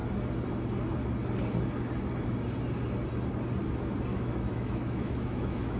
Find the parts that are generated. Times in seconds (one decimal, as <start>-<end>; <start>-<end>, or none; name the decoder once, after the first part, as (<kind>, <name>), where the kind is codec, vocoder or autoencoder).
4.1-5.8 (autoencoder, DAC-VAE)